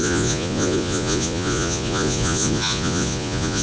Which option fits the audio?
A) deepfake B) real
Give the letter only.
A